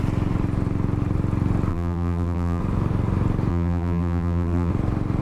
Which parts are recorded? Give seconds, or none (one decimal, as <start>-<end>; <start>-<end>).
0.0-1.7; 2.6-3.5; 4.7-5.2